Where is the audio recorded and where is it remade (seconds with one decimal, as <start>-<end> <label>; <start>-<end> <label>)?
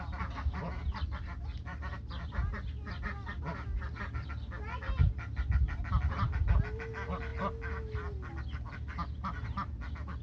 0.0-10.2 recorded